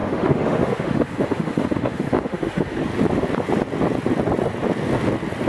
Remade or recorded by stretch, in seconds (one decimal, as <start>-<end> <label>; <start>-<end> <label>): 0.0-2.8 remade; 2.8-5.5 recorded